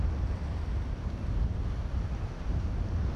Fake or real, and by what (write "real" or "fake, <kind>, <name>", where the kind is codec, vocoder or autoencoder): real